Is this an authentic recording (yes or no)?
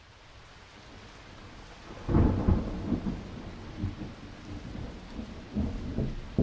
yes